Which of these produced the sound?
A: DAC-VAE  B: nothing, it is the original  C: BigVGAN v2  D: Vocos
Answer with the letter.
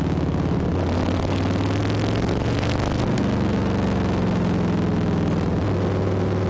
B